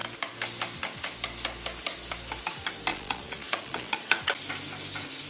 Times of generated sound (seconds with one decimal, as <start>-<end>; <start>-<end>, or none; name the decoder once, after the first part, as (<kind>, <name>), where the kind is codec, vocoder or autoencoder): 2.9-4.1 (vocoder, Vocos)